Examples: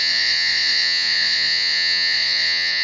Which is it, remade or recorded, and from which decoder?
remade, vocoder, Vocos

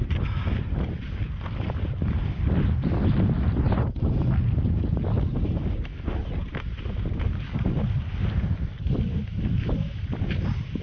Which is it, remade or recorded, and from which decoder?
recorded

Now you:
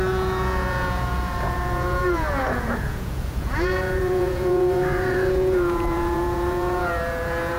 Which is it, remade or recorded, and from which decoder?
remade, vocoder, Vocos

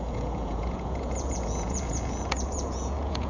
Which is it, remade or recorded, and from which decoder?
remade, vocoder, Vocos